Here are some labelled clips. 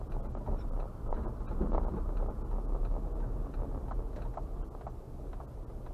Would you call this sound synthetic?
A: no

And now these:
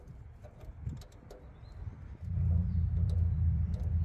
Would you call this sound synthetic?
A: yes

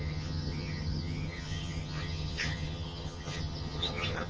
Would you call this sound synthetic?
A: yes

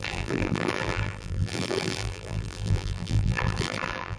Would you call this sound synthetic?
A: yes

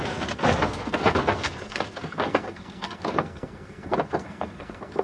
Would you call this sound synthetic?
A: yes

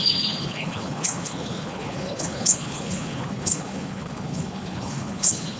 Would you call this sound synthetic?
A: yes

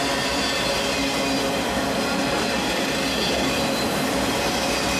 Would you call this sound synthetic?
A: no